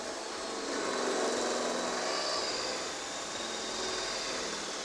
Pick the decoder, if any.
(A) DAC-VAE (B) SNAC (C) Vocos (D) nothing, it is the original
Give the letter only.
D